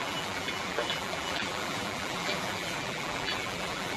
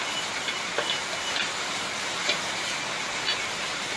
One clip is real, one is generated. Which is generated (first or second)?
first